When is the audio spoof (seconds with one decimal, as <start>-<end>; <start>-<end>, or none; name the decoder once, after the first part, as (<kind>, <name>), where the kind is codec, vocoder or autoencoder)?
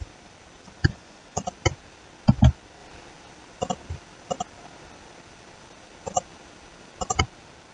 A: 0.8-1.4 (vocoder, Vocos)